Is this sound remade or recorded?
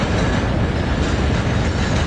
recorded